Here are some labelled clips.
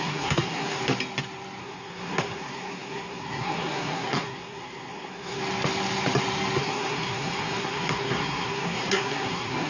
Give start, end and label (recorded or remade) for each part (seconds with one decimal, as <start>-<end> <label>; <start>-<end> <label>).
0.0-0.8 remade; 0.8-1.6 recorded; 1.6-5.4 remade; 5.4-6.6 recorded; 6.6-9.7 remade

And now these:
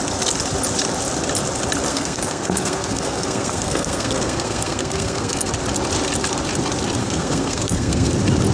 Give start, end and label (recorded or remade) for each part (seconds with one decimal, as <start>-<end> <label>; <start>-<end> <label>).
0.0-1.9 recorded; 1.9-5.5 remade; 5.5-7.0 recorded; 7.0-8.1 remade; 8.1-8.5 recorded

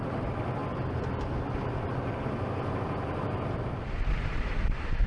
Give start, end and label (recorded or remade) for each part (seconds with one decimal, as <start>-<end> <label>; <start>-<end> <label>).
0.0-0.6 remade; 0.6-3.7 recorded; 3.7-5.1 remade

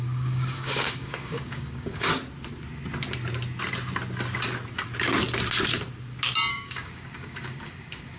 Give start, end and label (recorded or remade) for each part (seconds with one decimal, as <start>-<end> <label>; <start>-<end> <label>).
0.0-2.1 remade; 2.1-6.5 recorded; 6.5-8.2 remade